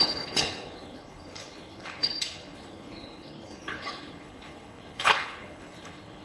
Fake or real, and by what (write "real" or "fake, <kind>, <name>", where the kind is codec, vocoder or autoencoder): fake, codec, HILCodec